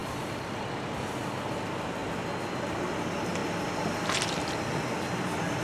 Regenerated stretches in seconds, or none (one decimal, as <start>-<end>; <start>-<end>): 0.0-1.3; 3.4-4.5